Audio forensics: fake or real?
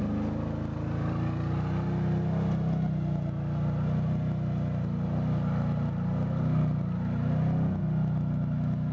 real